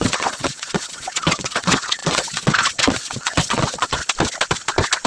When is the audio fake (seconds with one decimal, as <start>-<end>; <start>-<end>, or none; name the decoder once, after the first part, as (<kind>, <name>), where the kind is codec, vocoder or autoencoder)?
0.0-4.0 (vocoder, WaveNeXt)